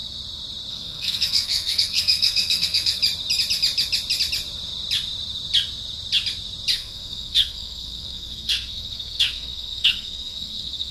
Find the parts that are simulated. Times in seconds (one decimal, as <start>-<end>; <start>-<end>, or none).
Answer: 0.7-3.0; 6.7-10.9